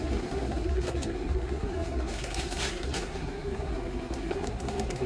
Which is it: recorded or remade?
remade